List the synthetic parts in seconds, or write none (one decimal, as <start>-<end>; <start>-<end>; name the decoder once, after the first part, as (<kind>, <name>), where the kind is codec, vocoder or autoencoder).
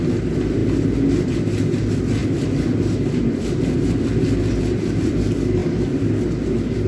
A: none